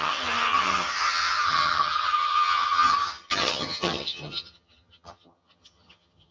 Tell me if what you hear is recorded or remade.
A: remade